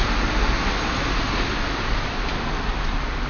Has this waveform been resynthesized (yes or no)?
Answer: no